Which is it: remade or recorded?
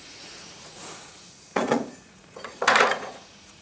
remade